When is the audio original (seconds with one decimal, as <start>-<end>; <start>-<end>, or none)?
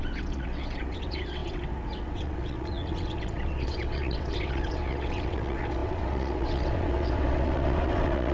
none